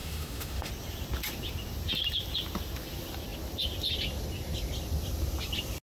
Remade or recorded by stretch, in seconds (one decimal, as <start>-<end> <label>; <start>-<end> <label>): 0.0-0.7 remade; 0.7-5.9 recorded